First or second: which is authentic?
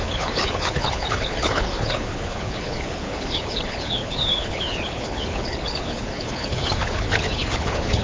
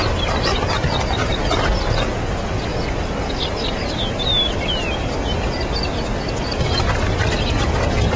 second